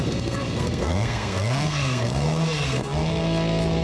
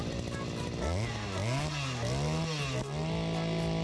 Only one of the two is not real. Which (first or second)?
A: first